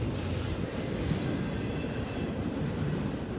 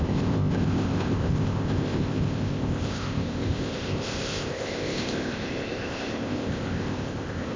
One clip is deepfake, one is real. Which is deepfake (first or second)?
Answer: second